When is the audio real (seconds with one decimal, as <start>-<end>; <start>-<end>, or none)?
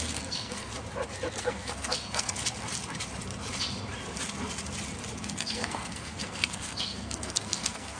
0.7-1.4; 2.4-5.2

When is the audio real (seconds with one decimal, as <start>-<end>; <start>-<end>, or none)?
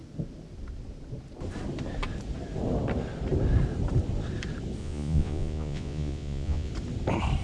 0.0-4.8; 6.7-7.4